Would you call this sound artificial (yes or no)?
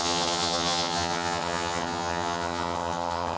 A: yes